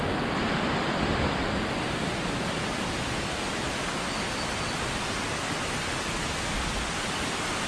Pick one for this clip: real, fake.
real